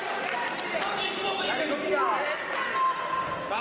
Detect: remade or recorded recorded